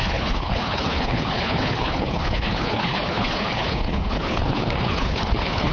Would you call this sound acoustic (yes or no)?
no